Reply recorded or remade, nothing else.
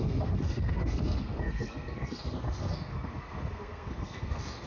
remade